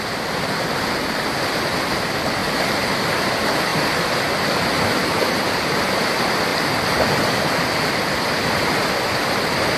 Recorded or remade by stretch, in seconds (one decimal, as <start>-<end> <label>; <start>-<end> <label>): 0.0-2.4 recorded; 2.4-3.3 remade; 3.3-5.0 recorded; 5.0-6.0 remade; 6.0-6.5 recorded; 6.5-7.7 remade; 7.7-9.8 recorded